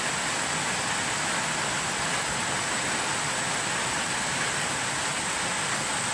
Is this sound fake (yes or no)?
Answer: no